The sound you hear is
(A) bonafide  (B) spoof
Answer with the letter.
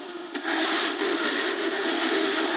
B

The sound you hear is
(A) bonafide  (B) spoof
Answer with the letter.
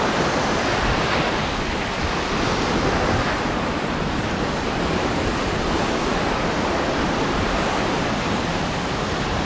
A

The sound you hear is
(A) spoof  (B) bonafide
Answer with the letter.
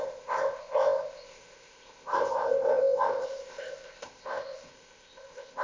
A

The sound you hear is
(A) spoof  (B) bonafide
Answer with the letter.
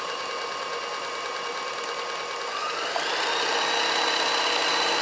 B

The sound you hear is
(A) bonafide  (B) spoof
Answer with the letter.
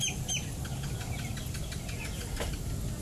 A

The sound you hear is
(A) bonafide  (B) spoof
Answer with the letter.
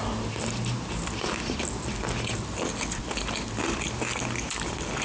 A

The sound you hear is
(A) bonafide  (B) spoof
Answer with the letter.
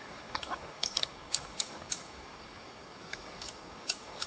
B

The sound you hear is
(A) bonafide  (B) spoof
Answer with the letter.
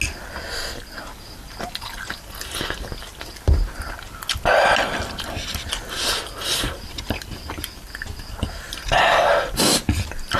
A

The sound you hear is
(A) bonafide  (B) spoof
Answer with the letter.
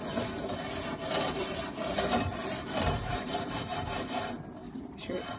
B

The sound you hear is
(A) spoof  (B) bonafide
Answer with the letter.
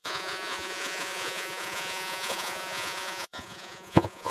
A